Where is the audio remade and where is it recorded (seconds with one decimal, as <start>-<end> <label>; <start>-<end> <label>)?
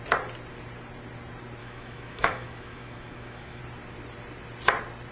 0.0-1.6 recorded; 1.6-3.6 remade; 3.6-5.1 recorded